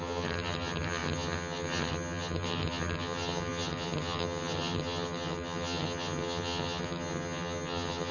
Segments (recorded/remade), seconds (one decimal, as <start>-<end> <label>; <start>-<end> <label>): 0.0-8.1 remade